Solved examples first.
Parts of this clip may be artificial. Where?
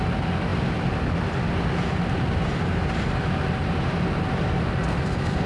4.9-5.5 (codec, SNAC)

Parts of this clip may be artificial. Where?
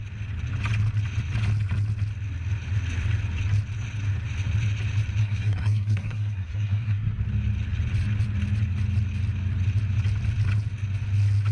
5.2-7.2 (codec, SNAC)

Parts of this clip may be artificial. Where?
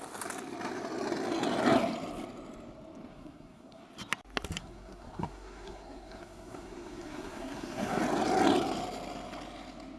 3.1-3.8 (codec, SNAC); 4.6-8.0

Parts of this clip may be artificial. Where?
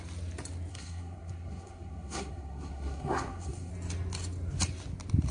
0.7-3.7 (codec, SNAC)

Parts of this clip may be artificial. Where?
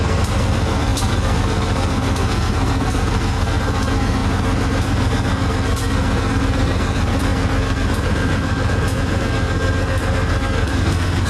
0.0-11.3 (codec, SNAC)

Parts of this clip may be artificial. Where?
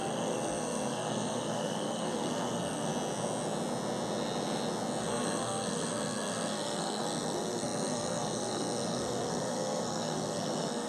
0.0-2.9 (codec, SNAC); 5.0-10.9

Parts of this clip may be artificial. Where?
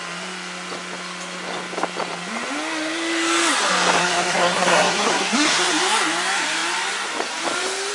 4.0-5.7 (codec, SNAC)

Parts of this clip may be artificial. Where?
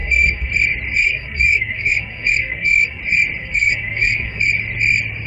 0.0-0.5 (codec, SNAC); 1.0-3.0; 3.4-4.4